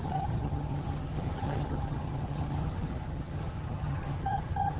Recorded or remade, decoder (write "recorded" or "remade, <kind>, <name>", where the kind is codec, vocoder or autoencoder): remade, vocoder, HiFi-GAN